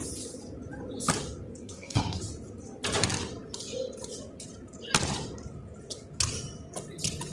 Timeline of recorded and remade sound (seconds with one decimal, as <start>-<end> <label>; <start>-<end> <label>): 0.0-1.6 recorded; 1.6-2.2 remade; 2.2-7.3 recorded